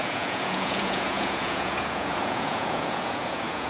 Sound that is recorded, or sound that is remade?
remade